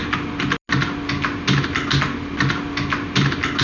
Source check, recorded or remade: recorded